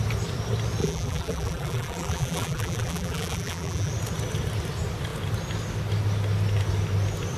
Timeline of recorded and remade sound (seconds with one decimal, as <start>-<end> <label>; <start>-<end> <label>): 0.0-0.8 recorded; 0.8-3.9 remade; 3.9-7.4 recorded